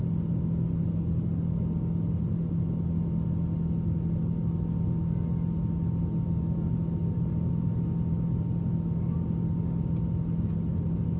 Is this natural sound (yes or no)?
yes